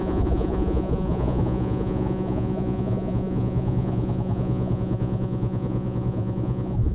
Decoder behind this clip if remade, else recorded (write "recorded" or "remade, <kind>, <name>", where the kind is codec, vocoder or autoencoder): remade, vocoder, Vocos